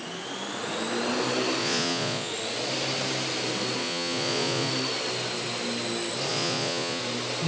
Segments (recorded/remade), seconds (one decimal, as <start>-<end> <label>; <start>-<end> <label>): 0.0-1.6 recorded; 1.6-2.3 remade; 2.3-3.8 recorded; 3.8-4.7 remade; 4.7-6.3 recorded; 6.3-7.0 remade; 7.0-7.5 recorded